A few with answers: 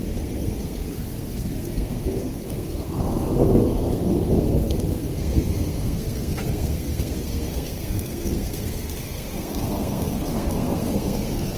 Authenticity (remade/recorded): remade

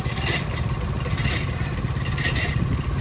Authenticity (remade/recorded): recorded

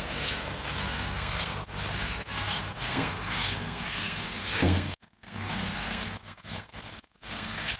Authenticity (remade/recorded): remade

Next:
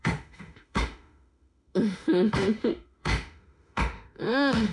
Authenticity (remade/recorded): remade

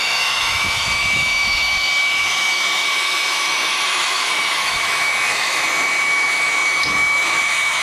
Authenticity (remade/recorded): remade